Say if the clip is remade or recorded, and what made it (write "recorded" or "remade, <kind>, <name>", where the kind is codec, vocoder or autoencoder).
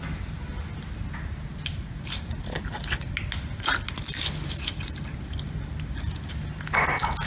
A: recorded